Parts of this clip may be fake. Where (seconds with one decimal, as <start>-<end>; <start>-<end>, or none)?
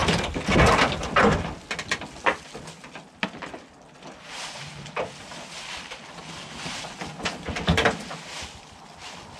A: none